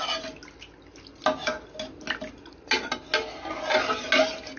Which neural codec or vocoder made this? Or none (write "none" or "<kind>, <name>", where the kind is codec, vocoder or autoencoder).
none